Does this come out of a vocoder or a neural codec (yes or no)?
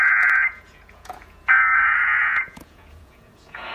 yes